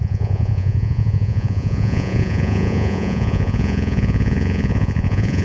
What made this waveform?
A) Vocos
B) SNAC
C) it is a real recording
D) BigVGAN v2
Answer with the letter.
A